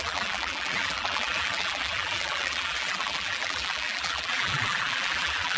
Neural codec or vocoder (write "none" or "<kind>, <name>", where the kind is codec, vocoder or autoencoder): vocoder, BigVGAN v2